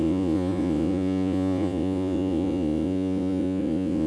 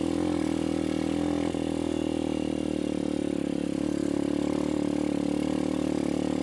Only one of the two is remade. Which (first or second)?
first